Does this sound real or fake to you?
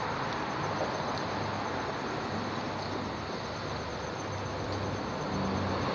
real